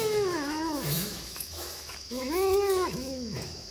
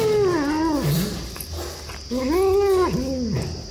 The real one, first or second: second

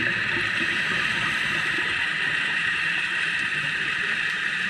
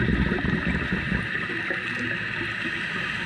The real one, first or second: second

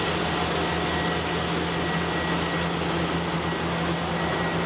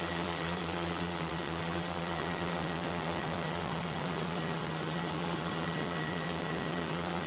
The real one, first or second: first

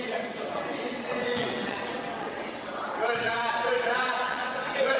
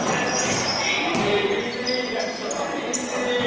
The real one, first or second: second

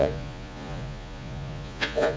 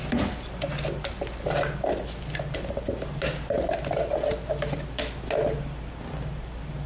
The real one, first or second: second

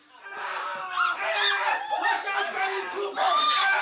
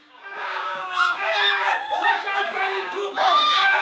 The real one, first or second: first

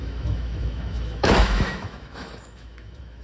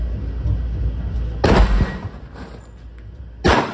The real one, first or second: second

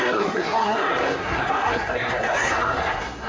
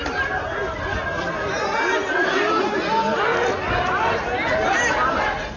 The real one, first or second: second